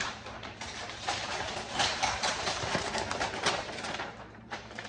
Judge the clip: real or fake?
fake